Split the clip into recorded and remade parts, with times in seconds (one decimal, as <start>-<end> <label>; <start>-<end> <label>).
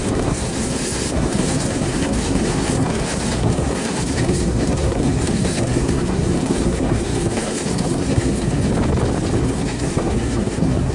0.0-8.6 remade; 8.6-9.4 recorded; 9.4-10.9 remade